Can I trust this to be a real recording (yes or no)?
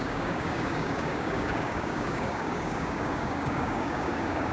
no